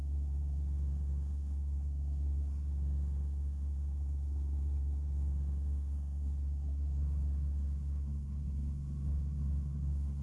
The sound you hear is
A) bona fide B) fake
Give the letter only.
B